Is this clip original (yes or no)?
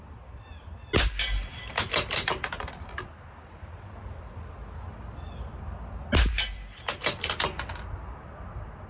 yes